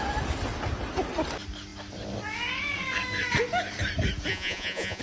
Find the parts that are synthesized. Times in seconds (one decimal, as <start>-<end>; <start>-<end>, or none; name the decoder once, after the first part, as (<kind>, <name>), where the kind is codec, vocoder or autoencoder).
4.3-5.0 (vocoder, Vocos)